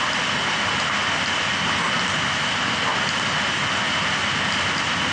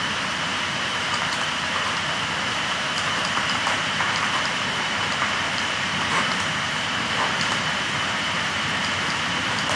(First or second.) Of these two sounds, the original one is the first